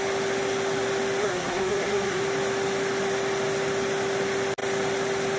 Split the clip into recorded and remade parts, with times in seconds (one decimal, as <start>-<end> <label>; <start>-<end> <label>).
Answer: 0.0-1.2 recorded; 1.2-2.2 remade; 2.2-5.4 recorded